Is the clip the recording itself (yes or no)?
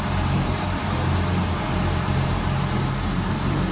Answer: no